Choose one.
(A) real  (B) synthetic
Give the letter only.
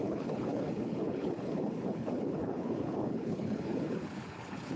B